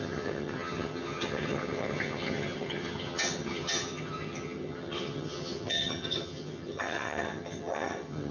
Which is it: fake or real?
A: fake